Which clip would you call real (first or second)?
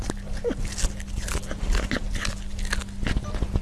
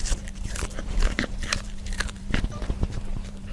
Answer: first